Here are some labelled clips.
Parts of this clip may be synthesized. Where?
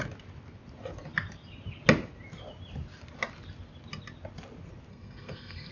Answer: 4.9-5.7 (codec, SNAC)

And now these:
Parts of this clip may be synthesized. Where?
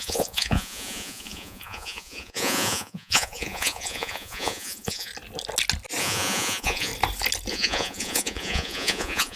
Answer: 0.0-5.1 (vocoder, Vocos); 6.0-6.9; 7.5-9.4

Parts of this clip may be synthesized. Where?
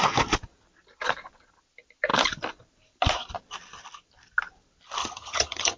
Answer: 5.0-5.8 (vocoder, HiFi-GAN)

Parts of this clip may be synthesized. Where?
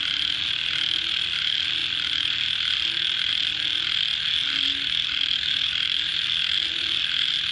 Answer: none